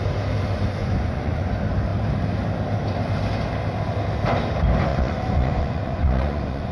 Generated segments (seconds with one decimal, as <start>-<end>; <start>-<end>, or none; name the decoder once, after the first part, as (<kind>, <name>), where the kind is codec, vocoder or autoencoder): 0.8-1.5 (vocoder, Vocos); 4.9-6.7